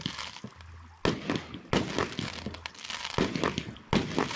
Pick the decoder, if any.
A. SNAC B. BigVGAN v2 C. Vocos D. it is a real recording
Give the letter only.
D